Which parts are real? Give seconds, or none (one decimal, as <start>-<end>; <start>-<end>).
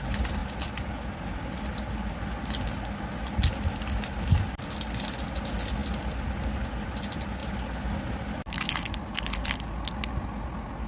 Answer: 0.0-10.9